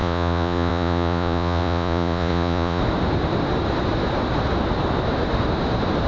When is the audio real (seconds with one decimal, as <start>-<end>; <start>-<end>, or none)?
2.8-6.1